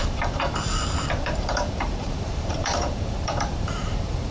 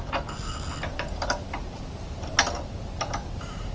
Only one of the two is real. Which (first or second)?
second